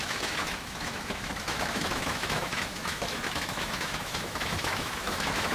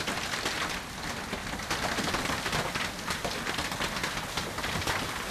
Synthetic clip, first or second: first